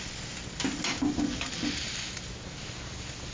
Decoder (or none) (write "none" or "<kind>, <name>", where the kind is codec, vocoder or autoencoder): none